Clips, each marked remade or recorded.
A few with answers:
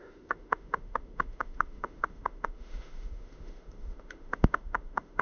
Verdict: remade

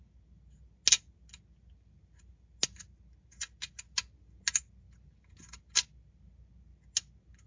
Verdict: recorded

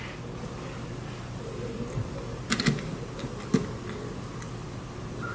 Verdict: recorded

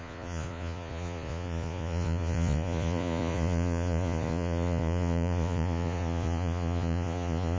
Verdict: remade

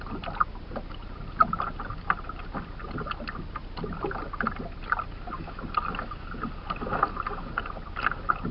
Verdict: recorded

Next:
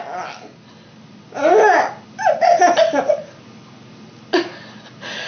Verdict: recorded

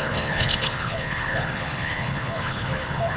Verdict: remade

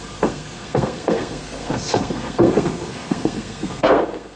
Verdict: remade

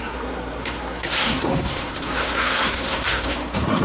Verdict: remade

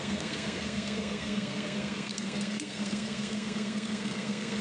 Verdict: remade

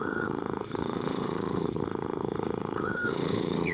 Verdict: remade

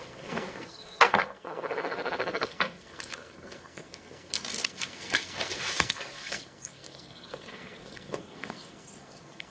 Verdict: remade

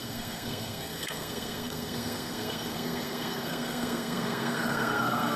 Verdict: remade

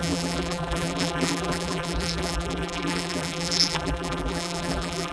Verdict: remade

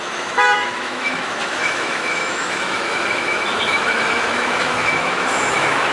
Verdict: remade